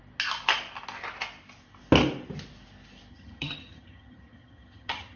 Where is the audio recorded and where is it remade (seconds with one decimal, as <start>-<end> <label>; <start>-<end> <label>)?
0.0-3.1 recorded; 3.1-5.2 remade